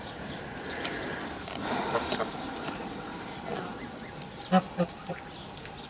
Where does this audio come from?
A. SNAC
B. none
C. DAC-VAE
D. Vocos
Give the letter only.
B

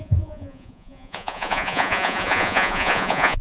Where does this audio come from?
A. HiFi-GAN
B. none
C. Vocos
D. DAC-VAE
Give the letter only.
C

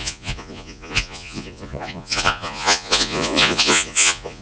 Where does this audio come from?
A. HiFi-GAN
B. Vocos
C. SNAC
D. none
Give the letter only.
B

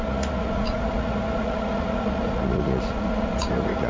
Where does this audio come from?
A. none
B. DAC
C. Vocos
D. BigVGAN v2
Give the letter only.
C